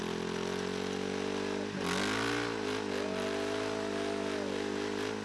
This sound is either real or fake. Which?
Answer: real